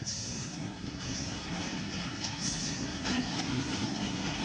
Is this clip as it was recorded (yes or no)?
no